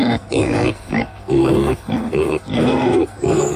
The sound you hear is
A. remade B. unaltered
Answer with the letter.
A